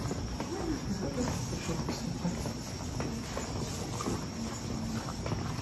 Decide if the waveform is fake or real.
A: real